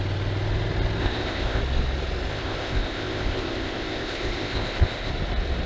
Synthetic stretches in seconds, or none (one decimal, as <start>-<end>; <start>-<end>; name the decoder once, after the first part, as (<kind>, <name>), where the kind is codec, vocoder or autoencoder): 1.0-1.6 (codec, ZipCodec); 2.3-5.1